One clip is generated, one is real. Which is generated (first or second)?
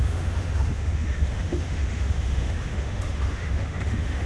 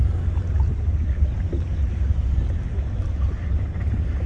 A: first